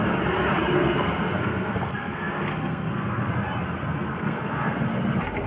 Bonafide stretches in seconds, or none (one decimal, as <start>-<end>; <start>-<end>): 0.0-0.8; 3.3-4.1; 4.8-5.5

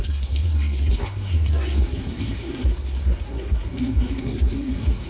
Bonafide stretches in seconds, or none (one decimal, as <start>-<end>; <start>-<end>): none

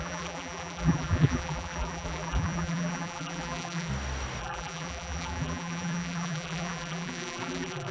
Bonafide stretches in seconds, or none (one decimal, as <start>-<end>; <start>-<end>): 3.9-4.4